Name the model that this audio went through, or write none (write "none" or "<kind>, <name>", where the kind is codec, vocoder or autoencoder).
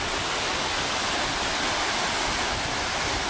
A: none